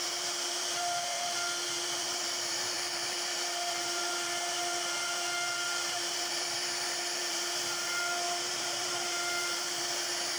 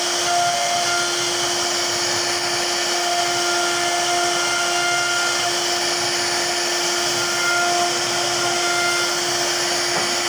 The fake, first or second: first